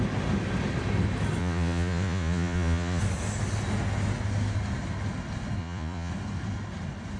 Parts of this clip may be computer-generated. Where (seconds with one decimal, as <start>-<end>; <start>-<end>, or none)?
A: 1.4-3.0; 5.6-6.1